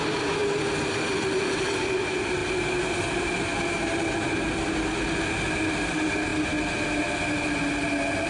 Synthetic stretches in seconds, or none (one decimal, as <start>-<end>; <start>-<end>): none